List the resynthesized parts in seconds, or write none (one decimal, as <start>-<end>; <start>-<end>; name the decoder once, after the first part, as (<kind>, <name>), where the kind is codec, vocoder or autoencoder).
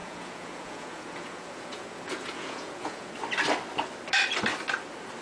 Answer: 0.0-3.1 (vocoder, Vocos)